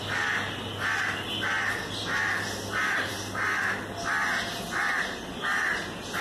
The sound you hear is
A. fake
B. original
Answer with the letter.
B